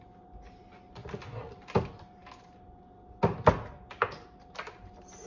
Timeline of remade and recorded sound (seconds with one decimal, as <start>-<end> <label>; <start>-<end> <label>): 0.0-5.3 recorded